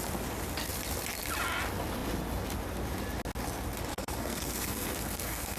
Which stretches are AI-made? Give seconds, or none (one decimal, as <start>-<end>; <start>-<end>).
3.9-5.6